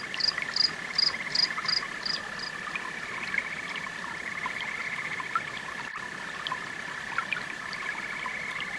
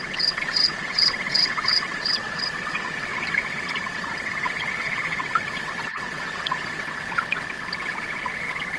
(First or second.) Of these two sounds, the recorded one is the first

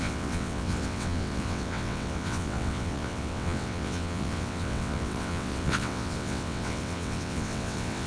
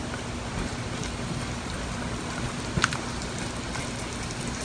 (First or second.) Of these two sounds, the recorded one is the second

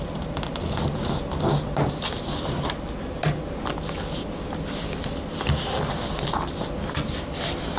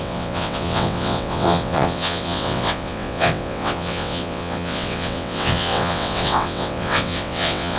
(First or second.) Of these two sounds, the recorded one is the first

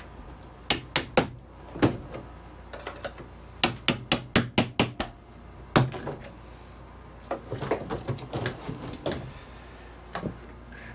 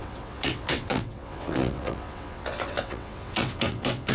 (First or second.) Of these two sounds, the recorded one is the first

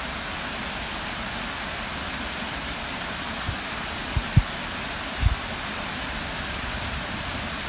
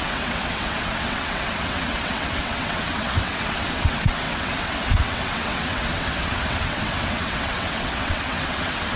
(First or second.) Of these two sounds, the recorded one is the first